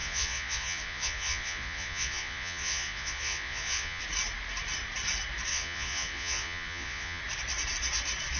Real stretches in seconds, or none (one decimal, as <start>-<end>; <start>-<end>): 4.0-5.5; 7.2-8.4